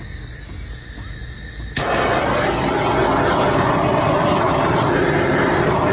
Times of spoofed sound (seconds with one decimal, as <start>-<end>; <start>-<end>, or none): none